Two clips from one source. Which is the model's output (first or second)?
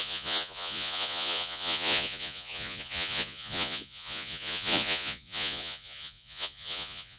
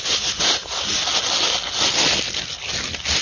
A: first